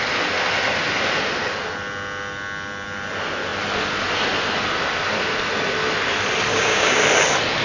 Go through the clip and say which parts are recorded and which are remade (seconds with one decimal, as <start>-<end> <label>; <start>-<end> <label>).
0.0-6.5 recorded; 6.5-7.0 remade; 7.0-7.6 recorded